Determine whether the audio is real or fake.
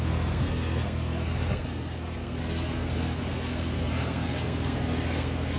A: fake